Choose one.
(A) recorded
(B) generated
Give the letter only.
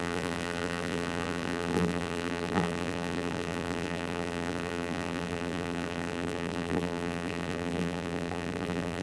B